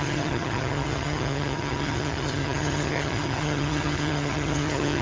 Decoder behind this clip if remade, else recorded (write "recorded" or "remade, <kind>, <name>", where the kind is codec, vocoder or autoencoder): remade, vocoder, HiFi-GAN